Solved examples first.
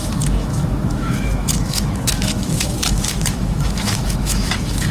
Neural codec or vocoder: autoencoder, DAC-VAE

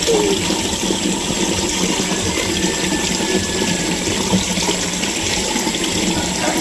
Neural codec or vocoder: none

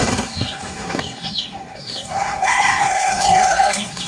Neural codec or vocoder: codec, SNAC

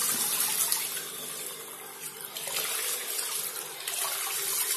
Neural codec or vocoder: none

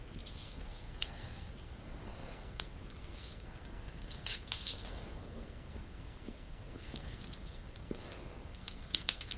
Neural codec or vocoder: codec, SNAC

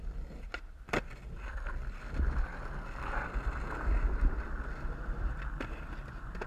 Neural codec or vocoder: none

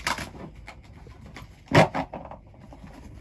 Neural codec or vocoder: none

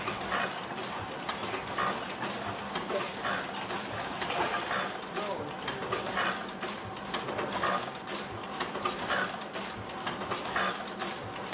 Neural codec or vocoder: none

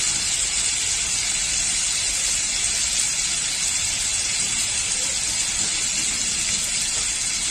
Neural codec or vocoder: none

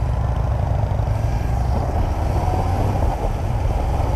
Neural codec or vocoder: none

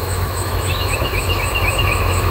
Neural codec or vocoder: autoencoder, DAC-VAE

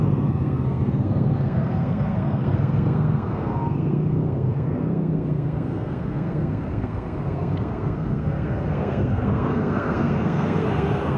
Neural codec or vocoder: codec, SNAC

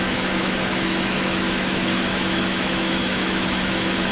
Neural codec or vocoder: autoencoder, DAC-VAE